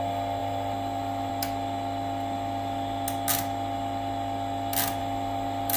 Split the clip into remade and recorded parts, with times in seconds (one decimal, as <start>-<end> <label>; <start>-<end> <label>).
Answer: 0.0-0.4 recorded; 0.4-1.3 remade; 1.3-5.0 recorded; 5.0-5.8 remade